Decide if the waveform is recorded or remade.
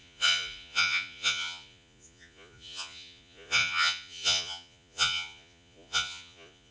remade